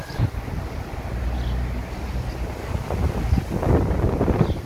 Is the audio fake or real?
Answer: real